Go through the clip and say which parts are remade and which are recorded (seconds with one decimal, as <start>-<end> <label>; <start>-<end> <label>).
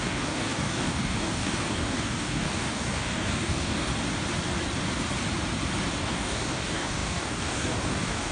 0.0-3.9 remade; 3.9-6.0 recorded; 6.0-8.3 remade